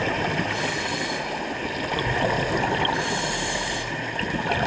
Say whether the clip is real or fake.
real